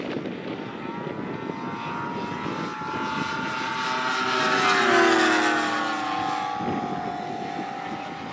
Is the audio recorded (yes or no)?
yes